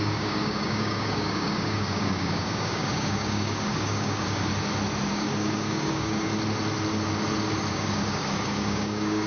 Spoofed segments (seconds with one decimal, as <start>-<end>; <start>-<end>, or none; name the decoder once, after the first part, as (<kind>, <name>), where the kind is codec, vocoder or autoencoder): 0.0-4.5 (codec, DAC); 5.1-6.3; 7.7-9.3